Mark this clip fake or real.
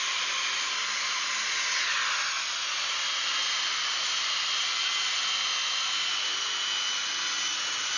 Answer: real